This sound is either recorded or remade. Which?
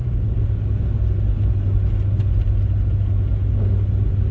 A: recorded